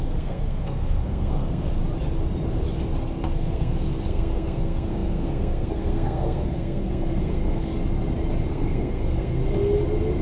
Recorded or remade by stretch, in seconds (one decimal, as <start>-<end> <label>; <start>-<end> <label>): 0.0-1.8 remade; 1.8-3.2 recorded; 3.2-7.7 remade; 7.7-8.5 recorded; 8.5-9.4 remade; 9.4-10.2 recorded